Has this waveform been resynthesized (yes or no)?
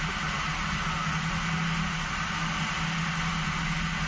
no